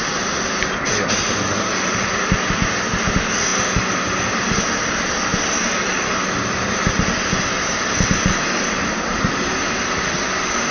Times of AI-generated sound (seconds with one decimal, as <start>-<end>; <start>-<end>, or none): none